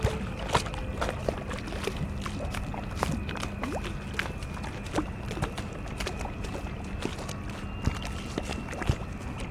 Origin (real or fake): real